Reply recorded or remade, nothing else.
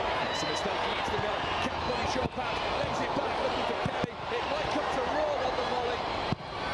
recorded